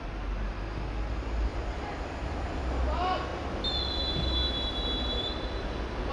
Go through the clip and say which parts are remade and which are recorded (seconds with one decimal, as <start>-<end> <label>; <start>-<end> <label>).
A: 0.0-1.5 recorded; 1.5-2.6 remade; 2.6-6.1 recorded